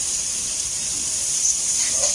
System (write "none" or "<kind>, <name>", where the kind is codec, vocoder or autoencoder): vocoder, BigVGAN v2